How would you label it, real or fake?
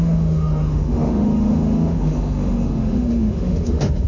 fake